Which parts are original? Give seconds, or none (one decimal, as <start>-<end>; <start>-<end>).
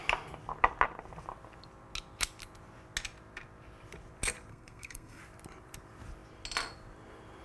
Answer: 0.0-4.5; 5.2-7.4